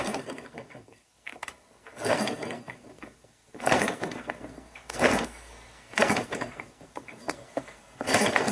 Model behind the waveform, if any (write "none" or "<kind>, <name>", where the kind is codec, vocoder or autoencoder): codec, SNAC